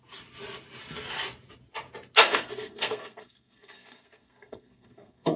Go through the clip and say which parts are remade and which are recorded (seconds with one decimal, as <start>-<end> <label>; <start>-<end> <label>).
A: 0.0-2.2 recorded; 2.2-5.4 remade